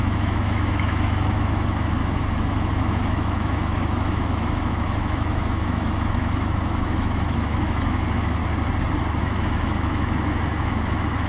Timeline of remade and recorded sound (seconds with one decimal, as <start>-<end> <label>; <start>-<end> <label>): 0.0-8.4 remade; 8.4-9.2 recorded; 9.2-11.3 remade